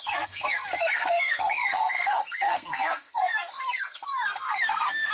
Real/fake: fake